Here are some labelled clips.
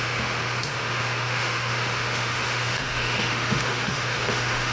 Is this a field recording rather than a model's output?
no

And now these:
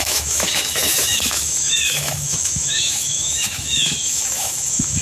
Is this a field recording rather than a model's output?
no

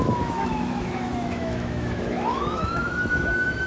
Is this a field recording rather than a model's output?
no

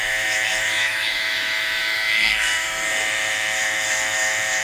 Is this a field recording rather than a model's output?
no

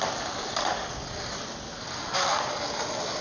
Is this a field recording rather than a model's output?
yes